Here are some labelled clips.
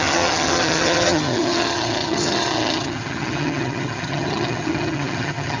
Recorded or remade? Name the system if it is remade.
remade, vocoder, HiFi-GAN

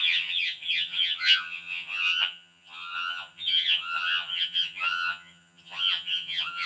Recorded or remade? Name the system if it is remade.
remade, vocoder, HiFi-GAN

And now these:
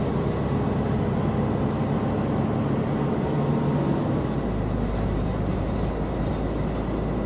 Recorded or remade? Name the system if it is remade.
recorded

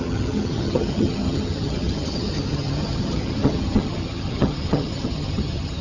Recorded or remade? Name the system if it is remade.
remade, vocoder, HiFi-GAN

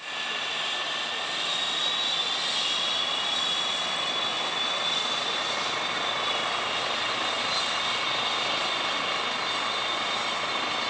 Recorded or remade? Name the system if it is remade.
recorded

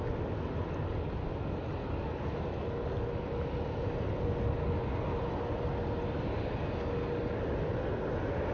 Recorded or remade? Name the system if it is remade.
recorded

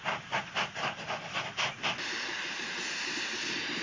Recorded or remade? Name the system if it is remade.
recorded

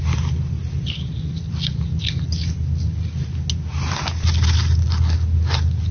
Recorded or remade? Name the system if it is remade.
recorded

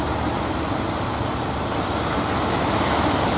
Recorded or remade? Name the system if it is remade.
recorded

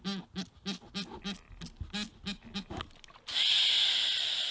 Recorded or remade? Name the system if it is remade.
recorded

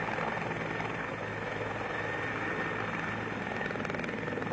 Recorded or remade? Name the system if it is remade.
recorded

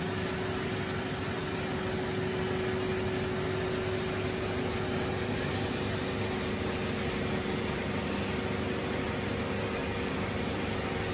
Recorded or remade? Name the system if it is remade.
recorded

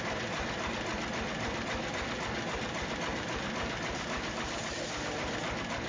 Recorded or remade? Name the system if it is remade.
recorded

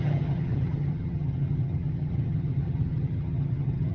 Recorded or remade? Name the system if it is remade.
remade, vocoder, HiFi-GAN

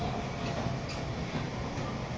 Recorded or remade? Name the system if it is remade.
recorded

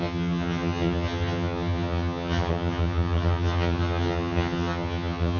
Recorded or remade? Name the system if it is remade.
remade, vocoder, HiFi-GAN